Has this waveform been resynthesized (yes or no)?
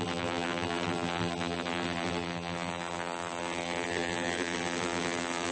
yes